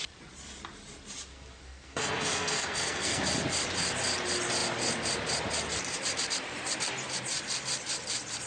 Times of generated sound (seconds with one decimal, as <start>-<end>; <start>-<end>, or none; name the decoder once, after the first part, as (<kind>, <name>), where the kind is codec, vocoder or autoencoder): 1.3-3.2 (codec, SNAC)